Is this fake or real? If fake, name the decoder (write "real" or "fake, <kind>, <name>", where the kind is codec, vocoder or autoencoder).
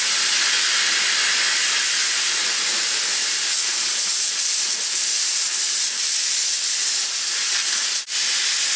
real